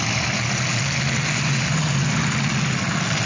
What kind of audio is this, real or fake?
fake